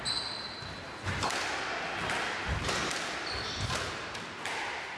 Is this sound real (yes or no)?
yes